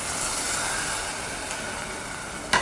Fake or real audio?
real